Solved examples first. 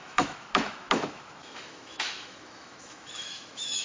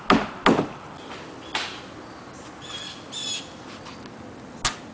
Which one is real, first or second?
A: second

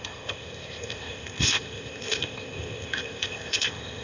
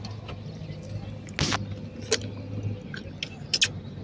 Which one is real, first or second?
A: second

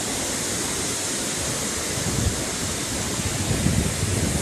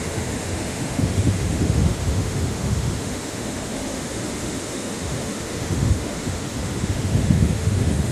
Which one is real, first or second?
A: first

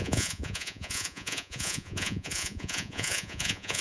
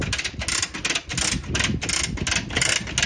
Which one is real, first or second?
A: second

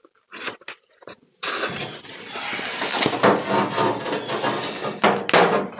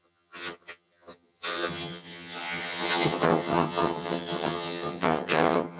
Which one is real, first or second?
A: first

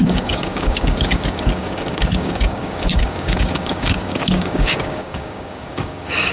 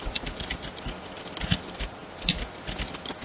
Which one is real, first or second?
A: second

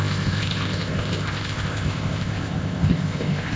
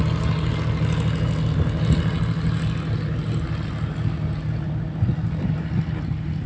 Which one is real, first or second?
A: second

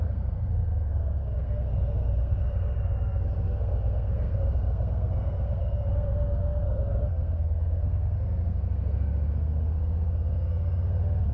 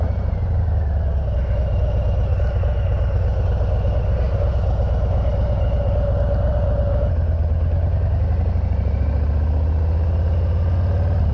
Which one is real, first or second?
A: second